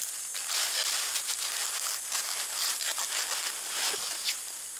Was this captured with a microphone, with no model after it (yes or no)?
yes